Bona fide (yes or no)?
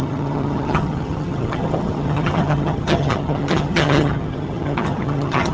no